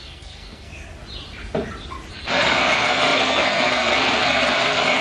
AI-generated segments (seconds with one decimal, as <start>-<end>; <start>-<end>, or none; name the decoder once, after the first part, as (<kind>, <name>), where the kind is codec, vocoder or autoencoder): 0.0-0.7 (codec, SNAC); 2.1-5.0